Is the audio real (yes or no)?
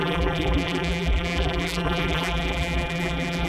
no